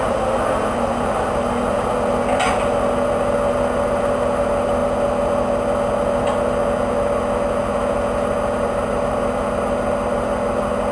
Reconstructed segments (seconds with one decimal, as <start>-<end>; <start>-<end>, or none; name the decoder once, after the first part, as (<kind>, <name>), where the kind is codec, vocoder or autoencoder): none